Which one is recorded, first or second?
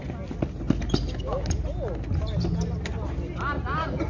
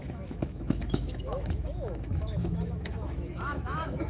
first